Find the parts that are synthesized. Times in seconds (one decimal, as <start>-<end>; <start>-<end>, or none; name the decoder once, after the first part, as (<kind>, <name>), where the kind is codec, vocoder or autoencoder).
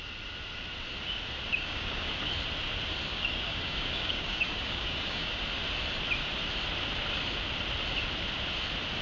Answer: 1.5-2.1 (codec, DAC); 3.1-5.4